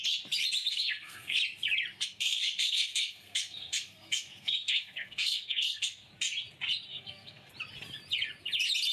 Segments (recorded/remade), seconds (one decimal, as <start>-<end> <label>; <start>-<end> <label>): 0.0-0.7 recorded; 0.7-1.4 remade; 1.4-1.9 recorded; 1.9-6.1 remade; 6.1-6.9 recorded; 6.9-7.5 remade; 7.5-8.9 recorded